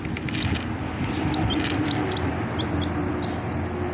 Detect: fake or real real